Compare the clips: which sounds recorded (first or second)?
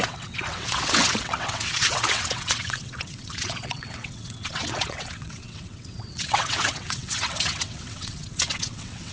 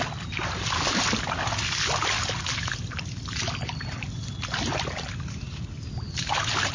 second